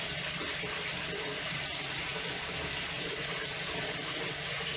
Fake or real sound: fake